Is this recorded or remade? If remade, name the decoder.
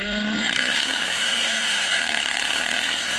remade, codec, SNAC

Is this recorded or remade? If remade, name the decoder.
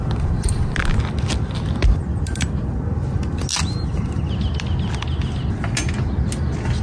recorded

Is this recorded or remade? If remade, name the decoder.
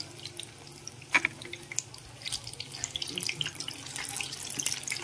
recorded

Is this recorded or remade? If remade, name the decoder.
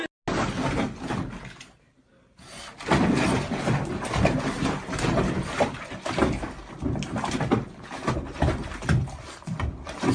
recorded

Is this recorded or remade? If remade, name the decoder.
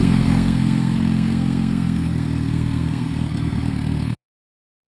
remade, codec, SNAC